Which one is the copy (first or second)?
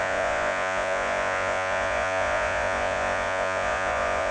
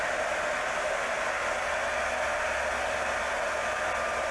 first